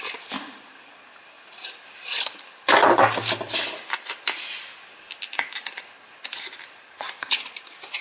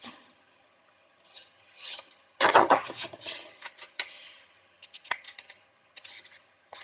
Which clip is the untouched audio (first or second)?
first